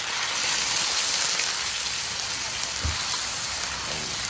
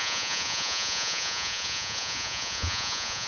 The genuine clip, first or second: first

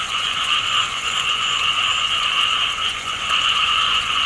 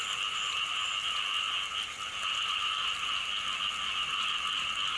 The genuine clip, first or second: second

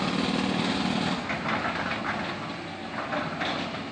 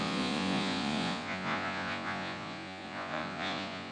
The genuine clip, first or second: first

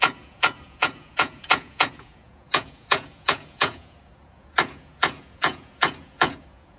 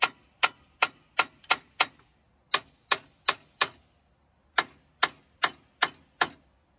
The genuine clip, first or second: second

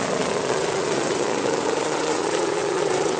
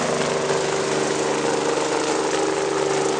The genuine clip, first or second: second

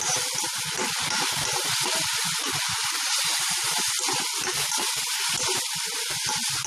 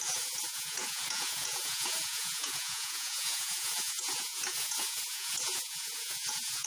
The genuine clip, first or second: first